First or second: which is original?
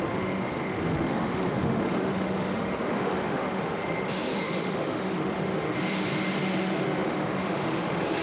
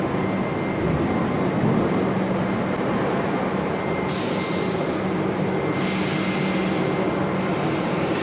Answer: second